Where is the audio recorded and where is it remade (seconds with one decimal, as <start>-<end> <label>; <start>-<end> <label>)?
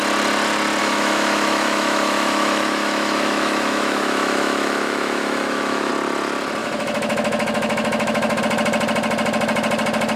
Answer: 0.0-0.8 recorded; 0.8-5.9 remade; 5.9-6.6 recorded; 6.6-8.4 remade; 8.4-10.2 recorded